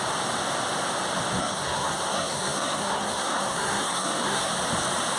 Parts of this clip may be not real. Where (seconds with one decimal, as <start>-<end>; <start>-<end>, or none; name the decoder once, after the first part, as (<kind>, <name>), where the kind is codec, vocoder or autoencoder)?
1.4-4.5 (codec, SNAC)